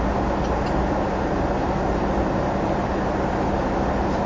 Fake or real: real